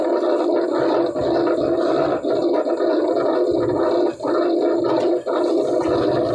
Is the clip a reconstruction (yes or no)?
no